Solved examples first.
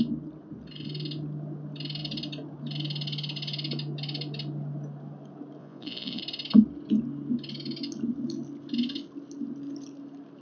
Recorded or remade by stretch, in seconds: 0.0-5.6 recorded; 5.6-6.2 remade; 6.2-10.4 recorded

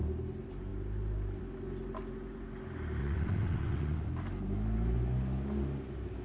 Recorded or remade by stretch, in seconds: 0.0-3.0 recorded; 3.0-4.1 remade; 4.1-6.2 recorded

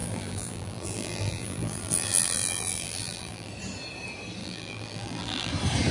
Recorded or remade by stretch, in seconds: 0.0-3.5 remade; 3.5-4.4 recorded; 4.4-5.5 remade; 5.5-5.9 recorded

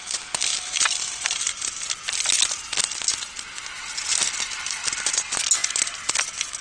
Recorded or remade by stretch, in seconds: 0.0-0.5 recorded; 0.5-2.0 remade; 2.0-6.6 recorded

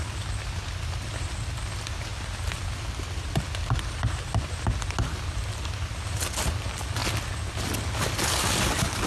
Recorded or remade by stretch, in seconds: 0.0-9.1 recorded